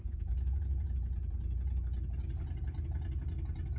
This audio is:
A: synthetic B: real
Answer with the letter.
B